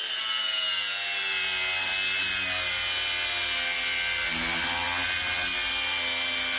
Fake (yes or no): no